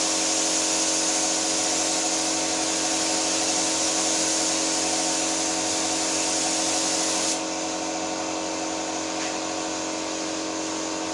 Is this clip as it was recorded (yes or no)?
yes